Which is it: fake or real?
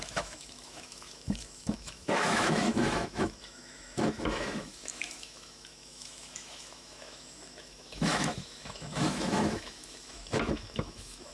fake